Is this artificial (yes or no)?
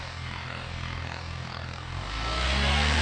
yes